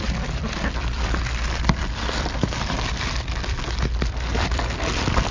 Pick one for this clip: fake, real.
fake